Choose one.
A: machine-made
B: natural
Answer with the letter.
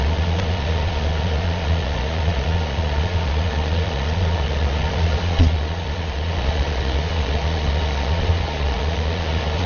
A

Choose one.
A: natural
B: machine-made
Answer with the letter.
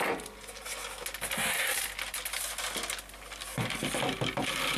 A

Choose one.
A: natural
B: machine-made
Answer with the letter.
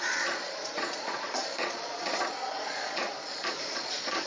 B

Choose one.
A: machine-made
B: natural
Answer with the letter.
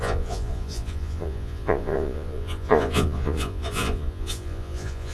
A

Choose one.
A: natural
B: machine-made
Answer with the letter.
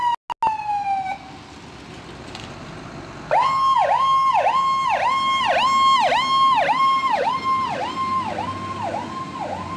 A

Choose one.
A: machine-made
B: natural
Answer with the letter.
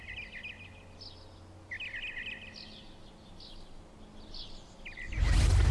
B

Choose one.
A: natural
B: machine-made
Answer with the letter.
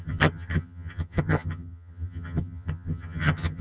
B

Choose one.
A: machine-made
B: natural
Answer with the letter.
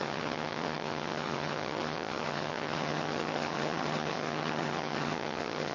A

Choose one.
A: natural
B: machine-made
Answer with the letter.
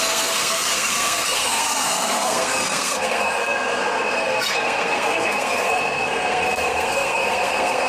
B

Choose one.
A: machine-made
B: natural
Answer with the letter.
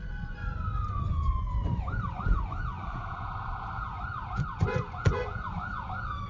A